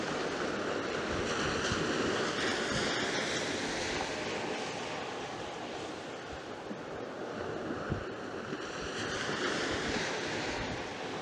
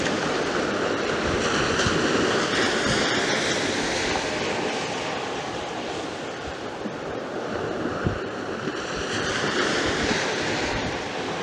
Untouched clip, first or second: first